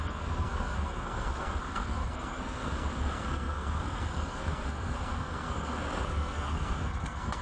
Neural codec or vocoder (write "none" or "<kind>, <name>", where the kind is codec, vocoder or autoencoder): codec, SNAC